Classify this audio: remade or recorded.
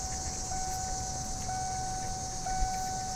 recorded